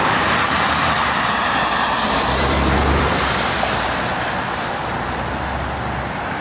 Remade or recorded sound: remade